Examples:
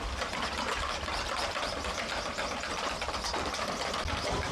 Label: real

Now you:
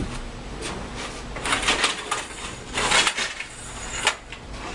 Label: real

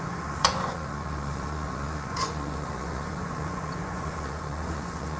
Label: fake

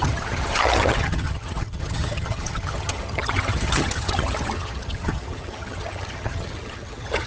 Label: fake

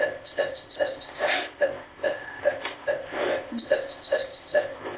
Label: fake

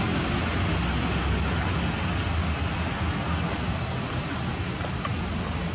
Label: real